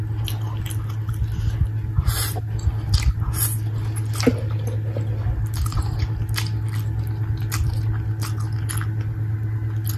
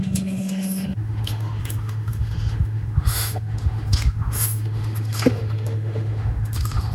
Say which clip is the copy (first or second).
second